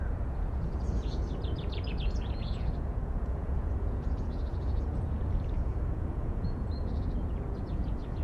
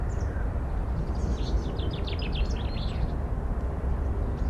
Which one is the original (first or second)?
second